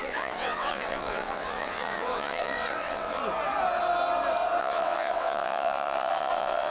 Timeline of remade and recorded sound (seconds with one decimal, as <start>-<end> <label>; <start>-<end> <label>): 0.0-3.2 remade; 3.2-4.6 recorded; 4.6-6.7 remade